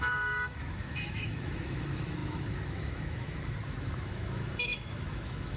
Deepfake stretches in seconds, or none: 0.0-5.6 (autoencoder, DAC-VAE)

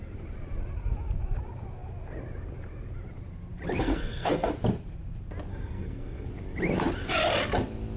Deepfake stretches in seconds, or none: 3.8-4.5 (codec, SNAC); 5.5-6.3

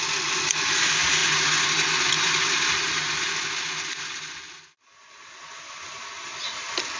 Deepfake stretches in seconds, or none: none

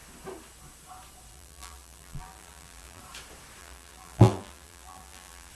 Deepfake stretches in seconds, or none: 1.3-3.0 (vocoder, BigVGAN v2); 3.6-5.5

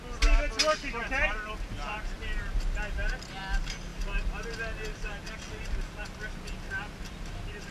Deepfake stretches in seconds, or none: 4.9-5.4 (vocoder, BigVGAN v2)

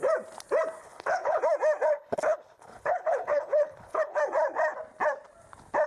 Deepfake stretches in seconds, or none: 0.8-1.4 (codec, HILCodec); 1.9-4.2

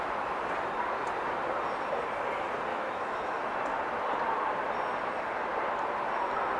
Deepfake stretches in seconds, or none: 2.7-3.4 (autoencoder, DAC-VAE)